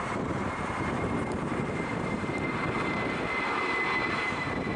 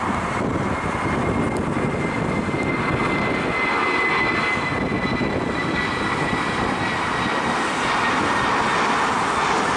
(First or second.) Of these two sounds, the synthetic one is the first